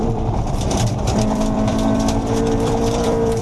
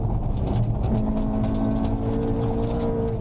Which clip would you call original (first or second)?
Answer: second